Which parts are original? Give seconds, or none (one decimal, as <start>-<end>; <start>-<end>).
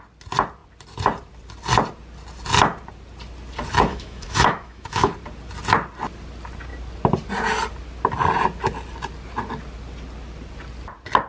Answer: 0.0-3.9; 5.1-11.3